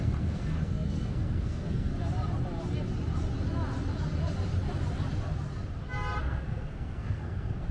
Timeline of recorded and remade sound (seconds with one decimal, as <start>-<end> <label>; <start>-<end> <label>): 0.0-1.9 remade; 1.9-6.2 recorded; 6.2-7.7 remade